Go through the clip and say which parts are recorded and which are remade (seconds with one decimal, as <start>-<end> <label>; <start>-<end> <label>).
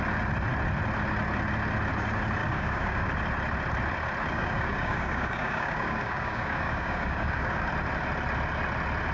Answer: 0.0-2.4 recorded; 2.4-3.1 remade; 3.1-4.3 recorded; 4.3-7.7 remade; 7.7-9.1 recorded